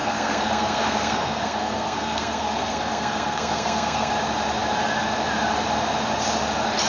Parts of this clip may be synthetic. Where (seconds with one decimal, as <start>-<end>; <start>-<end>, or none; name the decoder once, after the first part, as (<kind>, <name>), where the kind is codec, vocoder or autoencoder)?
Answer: 0.0-4.1 (codec, SNAC)